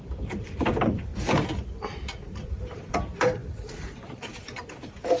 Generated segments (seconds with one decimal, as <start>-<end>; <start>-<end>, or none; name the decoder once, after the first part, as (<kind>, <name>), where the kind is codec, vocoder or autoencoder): 0.0-1.1 (vocoder, BigVGAN v2); 1.9-5.2